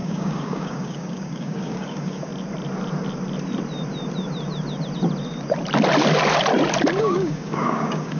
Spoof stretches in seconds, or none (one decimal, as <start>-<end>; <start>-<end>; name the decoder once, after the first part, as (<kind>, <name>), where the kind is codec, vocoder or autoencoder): 0.0-2.3 (codec, DAC); 7.0-8.2